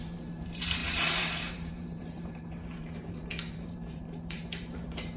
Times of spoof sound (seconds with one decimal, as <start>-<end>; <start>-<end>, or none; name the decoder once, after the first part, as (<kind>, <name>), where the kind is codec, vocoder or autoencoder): 0.0-5.2 (vocoder, BigVGAN v2)